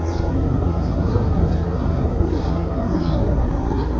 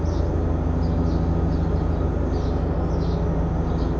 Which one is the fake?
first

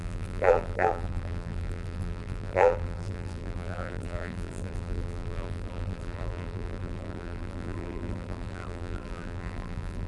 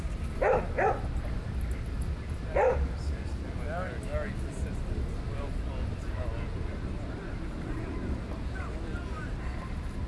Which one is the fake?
first